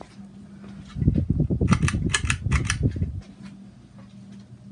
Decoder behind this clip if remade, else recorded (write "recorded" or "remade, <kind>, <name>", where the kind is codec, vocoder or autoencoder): recorded